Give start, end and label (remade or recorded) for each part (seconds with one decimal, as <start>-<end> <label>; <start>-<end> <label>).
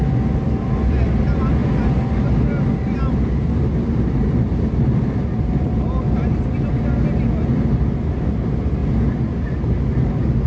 0.0-10.5 recorded